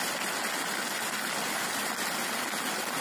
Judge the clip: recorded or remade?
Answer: recorded